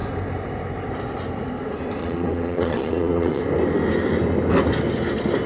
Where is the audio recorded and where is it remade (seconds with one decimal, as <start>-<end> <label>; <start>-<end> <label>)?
0.0-2.0 recorded; 2.0-3.4 remade; 3.4-5.5 recorded